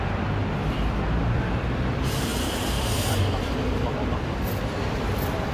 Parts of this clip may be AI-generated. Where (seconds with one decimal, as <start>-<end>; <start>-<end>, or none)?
0.0-5.5